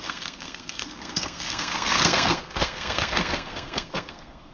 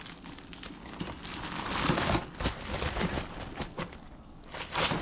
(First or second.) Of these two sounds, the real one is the second